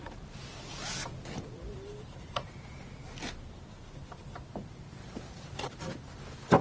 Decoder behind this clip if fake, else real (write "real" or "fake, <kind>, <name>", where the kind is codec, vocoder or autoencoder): real